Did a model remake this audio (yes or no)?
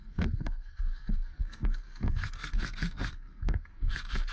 yes